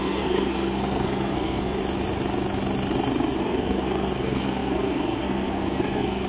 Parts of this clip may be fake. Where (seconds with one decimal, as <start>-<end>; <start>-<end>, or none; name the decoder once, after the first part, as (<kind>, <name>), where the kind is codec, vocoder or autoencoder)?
0.0-1.8 (codec, SNAC); 3.4-6.3